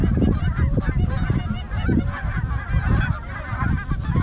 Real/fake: real